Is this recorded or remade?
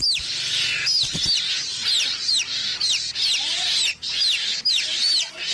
recorded